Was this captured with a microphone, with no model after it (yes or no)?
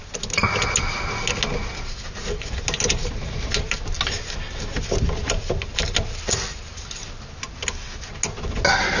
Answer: yes